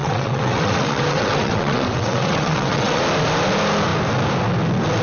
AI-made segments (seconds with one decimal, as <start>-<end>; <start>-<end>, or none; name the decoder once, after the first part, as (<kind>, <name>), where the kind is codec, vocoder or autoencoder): 0.0-3.0 (vocoder, WaveNeXt)